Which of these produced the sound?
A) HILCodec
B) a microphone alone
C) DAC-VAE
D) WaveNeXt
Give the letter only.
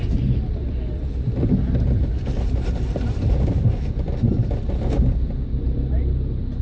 B